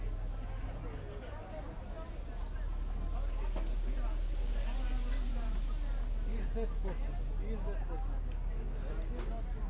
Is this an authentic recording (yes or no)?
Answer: yes